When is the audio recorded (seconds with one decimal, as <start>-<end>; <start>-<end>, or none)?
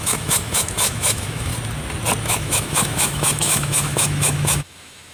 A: 1.5-2.2